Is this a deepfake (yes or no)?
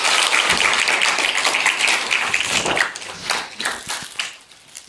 no